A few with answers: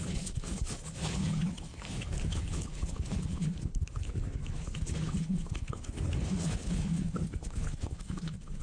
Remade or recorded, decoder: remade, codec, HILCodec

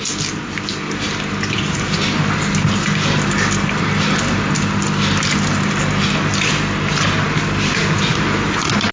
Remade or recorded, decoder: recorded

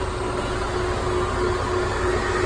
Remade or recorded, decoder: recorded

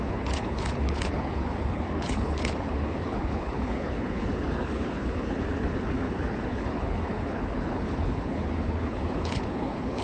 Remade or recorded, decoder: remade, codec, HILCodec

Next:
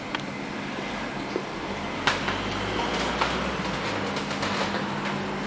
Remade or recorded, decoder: recorded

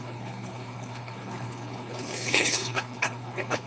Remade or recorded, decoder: remade, codec, HILCodec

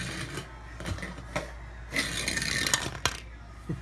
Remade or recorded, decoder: recorded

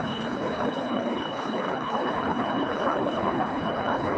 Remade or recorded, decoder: remade, codec, HILCodec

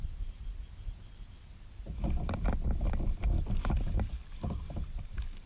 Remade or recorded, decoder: recorded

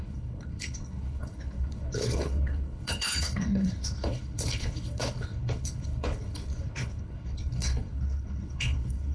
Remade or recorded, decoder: remade, codec, HILCodec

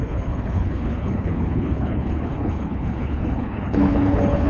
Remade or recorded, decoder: remade, codec, HILCodec